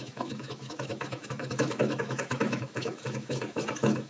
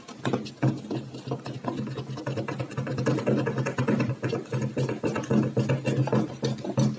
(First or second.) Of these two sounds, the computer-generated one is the first